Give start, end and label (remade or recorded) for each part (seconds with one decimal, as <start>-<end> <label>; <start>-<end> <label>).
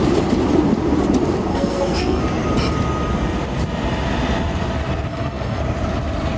0.0-1.5 recorded; 1.5-2.2 remade; 2.2-5.1 recorded; 5.1-5.6 remade; 5.6-6.4 recorded